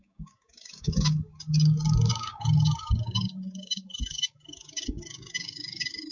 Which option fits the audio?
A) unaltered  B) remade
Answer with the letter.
B